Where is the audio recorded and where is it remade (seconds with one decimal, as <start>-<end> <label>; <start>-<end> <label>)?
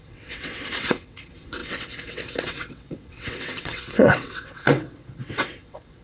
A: 0.0-6.0 remade